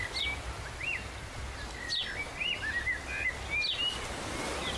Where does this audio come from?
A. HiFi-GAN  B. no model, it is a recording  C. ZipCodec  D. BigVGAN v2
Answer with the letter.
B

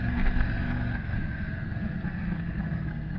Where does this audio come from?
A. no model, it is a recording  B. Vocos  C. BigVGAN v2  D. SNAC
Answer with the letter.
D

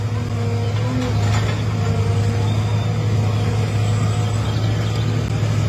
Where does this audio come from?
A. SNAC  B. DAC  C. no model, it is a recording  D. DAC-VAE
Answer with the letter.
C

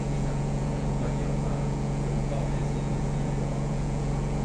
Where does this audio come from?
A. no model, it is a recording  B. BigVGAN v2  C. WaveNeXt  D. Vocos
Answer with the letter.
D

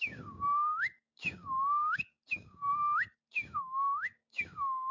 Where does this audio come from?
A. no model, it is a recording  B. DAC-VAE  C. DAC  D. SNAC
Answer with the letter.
C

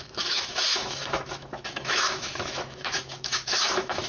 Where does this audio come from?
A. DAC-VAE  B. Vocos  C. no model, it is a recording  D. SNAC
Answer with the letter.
A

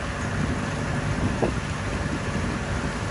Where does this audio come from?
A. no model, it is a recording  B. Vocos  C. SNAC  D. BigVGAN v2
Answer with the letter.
A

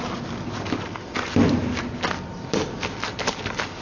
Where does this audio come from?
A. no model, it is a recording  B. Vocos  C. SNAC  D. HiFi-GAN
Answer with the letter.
A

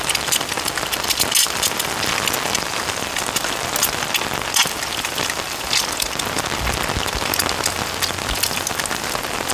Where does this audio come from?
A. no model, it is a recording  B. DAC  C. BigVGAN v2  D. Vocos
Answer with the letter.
A